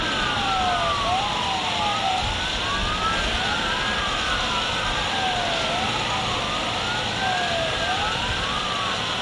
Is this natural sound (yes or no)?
yes